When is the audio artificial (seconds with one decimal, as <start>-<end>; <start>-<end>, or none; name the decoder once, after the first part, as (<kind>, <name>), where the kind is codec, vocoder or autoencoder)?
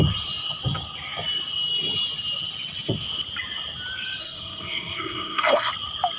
4.2-5.7 (codec, SNAC)